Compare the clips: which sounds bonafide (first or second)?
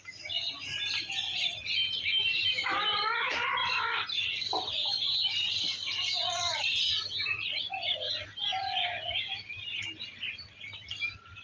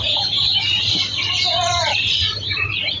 first